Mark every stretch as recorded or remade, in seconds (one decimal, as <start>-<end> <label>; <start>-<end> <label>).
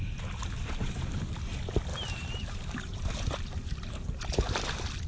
0.0-0.4 recorded; 0.4-1.2 remade; 1.2-1.9 recorded; 1.9-4.6 remade; 4.6-5.1 recorded